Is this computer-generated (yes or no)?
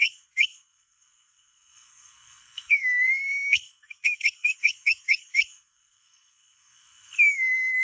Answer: yes